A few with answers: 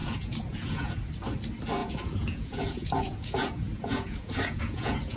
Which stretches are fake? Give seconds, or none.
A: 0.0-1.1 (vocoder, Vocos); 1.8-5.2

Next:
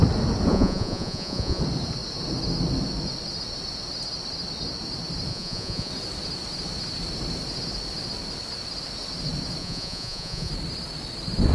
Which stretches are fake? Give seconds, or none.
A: 0.5-1.6 (vocoder, Vocos); 5.3-5.9; 9.6-10.5

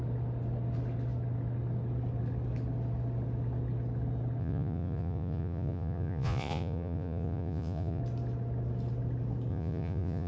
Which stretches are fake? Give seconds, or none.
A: 4.4-8.0 (vocoder, Vocos); 9.5-10.3

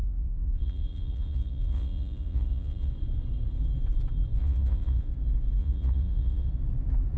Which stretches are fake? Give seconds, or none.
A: 0.0-2.9 (vocoder, Vocos); 4.4-5.1; 5.6-6.5

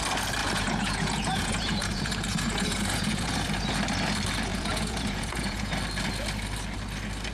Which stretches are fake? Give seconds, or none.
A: 0.4-3.6 (vocoder, Vocos); 4.5-5.7

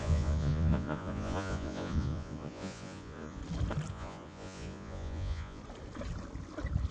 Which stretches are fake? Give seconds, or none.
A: 0.0-3.4 (vocoder, Vocos); 3.9-5.6